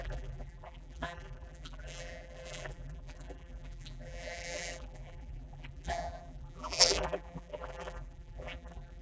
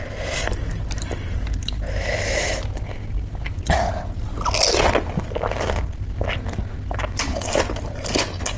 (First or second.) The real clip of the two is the second